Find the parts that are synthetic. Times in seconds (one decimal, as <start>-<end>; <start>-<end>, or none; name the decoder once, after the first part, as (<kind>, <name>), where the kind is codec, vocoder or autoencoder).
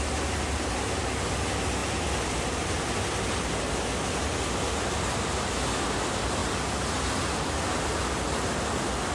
none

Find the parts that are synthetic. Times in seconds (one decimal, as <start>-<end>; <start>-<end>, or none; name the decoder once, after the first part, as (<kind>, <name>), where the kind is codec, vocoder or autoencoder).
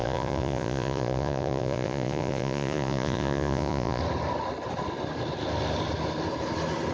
0.0-4.0 (vocoder, Vocos)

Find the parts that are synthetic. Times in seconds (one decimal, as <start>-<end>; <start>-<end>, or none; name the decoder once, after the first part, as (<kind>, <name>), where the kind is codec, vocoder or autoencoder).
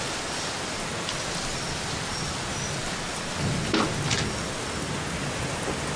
none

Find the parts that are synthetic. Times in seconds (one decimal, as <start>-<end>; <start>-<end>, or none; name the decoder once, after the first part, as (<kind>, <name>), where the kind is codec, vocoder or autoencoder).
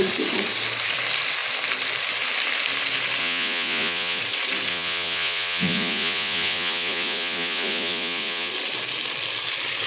3.2-4.2 (vocoder, Vocos); 4.7-8.5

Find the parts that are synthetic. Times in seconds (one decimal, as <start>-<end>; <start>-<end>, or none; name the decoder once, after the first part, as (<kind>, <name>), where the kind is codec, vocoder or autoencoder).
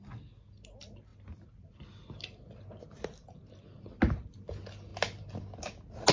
none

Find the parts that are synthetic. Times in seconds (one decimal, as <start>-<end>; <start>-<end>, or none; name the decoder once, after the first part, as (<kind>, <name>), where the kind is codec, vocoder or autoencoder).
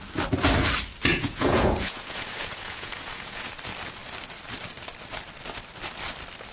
1.1-3.5 (vocoder, Vocos)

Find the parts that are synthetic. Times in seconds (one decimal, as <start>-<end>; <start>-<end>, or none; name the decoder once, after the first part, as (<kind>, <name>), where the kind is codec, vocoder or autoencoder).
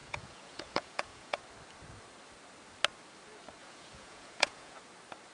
0.0-1.4 (vocoder, Vocos); 3.6-4.8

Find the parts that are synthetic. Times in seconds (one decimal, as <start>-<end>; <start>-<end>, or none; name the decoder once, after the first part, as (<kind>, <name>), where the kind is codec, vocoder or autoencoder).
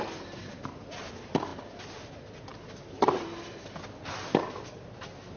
none